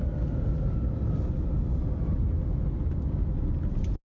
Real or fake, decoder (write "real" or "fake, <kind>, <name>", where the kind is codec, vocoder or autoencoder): real